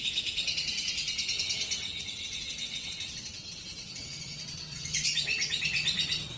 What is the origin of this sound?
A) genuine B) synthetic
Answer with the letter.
B